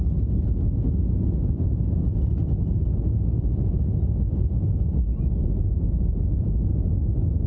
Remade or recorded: remade